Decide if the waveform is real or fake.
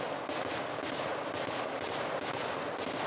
real